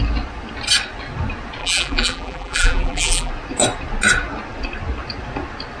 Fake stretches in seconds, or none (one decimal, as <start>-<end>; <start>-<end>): 1.6-3.3